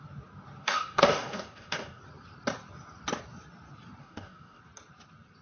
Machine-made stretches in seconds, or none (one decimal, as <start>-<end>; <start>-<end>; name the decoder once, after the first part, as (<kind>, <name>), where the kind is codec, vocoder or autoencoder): 0.6-2.0 (codec, DAC); 4.0-4.6